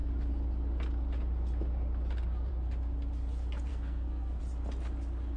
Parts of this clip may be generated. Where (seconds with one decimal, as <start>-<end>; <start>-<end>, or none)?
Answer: 3.7-4.4